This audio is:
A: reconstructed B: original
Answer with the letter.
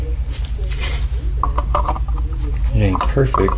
B